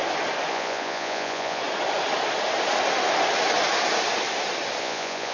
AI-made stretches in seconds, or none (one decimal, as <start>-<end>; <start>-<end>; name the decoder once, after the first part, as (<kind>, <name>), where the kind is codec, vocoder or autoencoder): 0.5-1.6 (vocoder, Vocos); 4.8-5.3